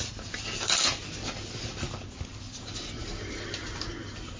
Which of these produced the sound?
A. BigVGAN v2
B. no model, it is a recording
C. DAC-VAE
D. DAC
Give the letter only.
B